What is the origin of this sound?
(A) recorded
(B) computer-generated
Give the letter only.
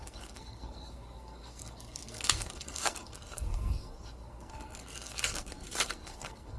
B